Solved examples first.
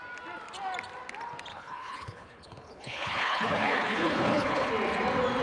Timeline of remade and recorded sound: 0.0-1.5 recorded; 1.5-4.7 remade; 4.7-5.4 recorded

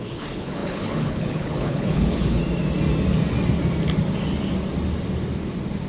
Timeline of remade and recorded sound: 0.0-2.4 remade; 2.4-5.9 recorded

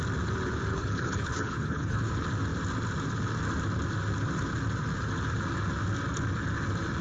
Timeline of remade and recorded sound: 0.0-0.7 recorded; 0.7-2.1 remade; 2.1-7.0 recorded

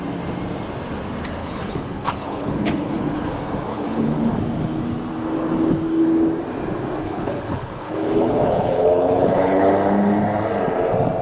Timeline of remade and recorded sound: 0.0-1.4 recorded; 1.4-3.3 remade; 3.3-3.7 recorded; 3.7-4.3 remade; 4.3-7.0 recorded; 7.0-9.7 remade; 9.7-11.2 recorded